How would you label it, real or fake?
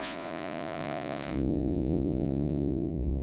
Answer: fake